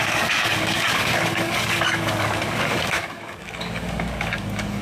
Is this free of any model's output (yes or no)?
no